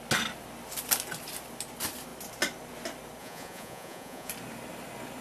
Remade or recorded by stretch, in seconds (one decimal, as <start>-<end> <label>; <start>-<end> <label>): 0.0-3.2 recorded; 3.2-4.3 remade; 4.3-5.2 recorded